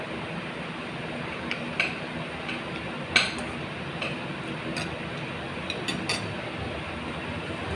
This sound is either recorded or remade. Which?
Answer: recorded